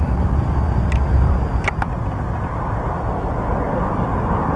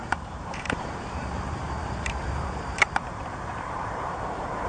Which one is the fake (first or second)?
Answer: second